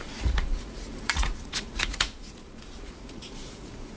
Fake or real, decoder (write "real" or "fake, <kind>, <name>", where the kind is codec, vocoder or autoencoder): fake, vocoder, Vocos